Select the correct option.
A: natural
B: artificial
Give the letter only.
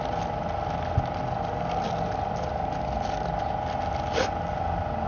A